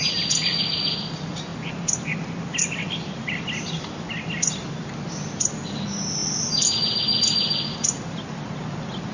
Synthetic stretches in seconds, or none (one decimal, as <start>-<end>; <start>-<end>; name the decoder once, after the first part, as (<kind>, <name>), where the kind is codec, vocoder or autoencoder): none